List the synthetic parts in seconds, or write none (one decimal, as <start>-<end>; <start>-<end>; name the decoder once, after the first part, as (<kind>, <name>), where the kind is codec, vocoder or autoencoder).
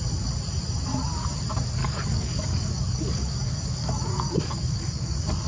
1.8-5.1 (codec, DAC)